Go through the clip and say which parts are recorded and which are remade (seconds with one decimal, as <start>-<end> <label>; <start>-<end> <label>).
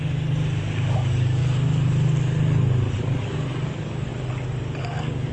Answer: 0.0-0.4 remade; 0.4-0.9 recorded; 0.9-1.4 remade; 1.4-3.0 recorded; 3.0-4.1 remade; 4.1-4.8 recorded; 4.8-5.3 remade